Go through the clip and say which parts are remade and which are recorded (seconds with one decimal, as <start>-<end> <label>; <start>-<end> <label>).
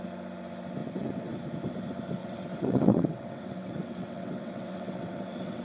0.0-0.8 recorded; 0.8-1.4 remade; 1.4-2.2 recorded; 2.2-5.6 remade